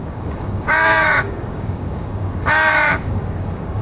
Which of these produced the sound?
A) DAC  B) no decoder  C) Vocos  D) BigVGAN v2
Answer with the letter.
A